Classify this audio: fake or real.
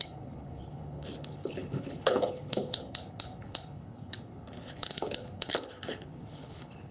fake